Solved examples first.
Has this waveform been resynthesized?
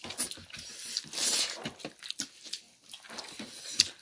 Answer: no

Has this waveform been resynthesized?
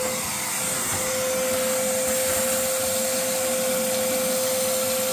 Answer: no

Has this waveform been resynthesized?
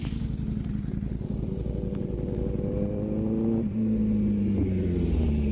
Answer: no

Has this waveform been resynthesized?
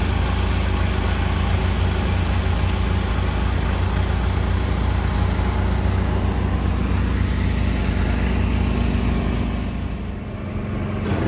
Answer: no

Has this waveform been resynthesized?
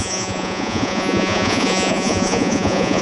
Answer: yes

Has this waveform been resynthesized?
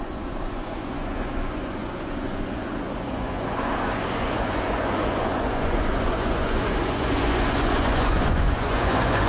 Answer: yes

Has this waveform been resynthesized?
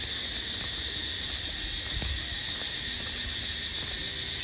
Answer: no